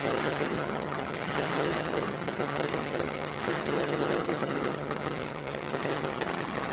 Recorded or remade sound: remade